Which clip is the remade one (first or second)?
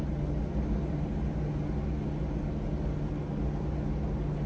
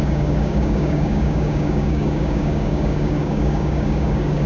second